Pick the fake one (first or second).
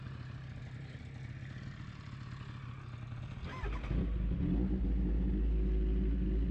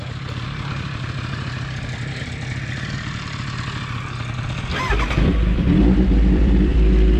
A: second